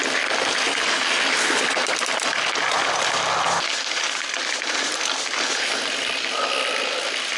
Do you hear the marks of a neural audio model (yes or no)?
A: no